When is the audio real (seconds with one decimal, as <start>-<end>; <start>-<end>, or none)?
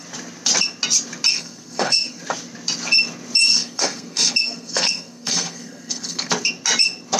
0.0-1.3; 2.2-3.5; 6.3-7.2